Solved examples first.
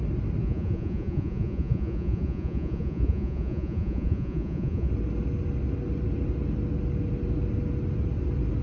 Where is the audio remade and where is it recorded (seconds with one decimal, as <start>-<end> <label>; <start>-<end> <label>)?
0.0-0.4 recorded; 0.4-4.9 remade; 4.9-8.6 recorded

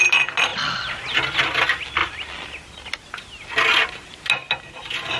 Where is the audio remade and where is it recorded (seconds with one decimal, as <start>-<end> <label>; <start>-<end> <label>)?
0.0-5.2 recorded

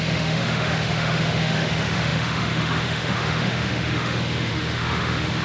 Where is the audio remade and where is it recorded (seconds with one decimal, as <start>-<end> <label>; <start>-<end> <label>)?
0.0-5.4 remade

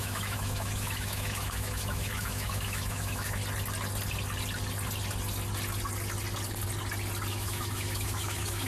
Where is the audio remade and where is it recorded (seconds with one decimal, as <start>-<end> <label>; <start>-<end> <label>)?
0.0-3.4 remade; 3.4-7.3 recorded; 7.3-8.7 remade

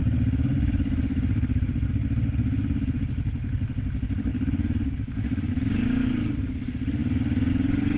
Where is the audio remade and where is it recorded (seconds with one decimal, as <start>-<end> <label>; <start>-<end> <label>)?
0.0-8.0 recorded

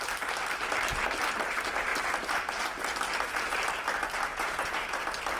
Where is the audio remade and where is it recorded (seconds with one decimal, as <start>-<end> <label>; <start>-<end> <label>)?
0.0-4.3 recorded; 4.3-5.0 remade; 5.0-5.4 recorded

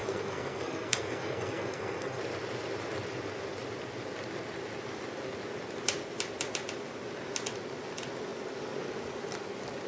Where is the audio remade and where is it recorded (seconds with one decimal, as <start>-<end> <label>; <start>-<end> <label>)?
0.0-2.2 remade; 2.2-9.9 recorded